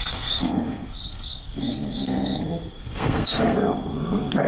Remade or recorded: remade